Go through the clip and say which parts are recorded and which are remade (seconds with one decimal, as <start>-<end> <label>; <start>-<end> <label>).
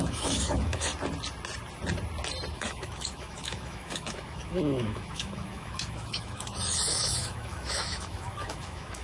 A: 0.0-0.9 remade; 0.9-2.5 recorded; 2.5-9.0 remade